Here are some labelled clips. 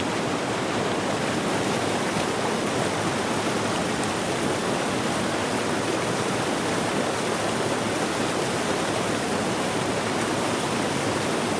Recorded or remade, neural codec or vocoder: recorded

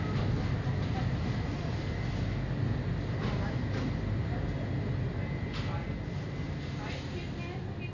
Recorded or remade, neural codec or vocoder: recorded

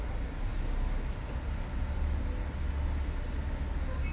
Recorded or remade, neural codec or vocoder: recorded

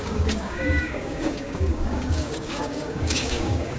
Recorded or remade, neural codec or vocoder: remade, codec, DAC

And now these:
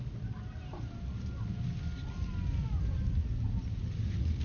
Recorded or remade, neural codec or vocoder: recorded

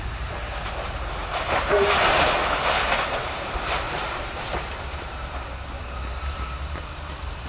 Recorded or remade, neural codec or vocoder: remade, vocoder, BigVGAN v2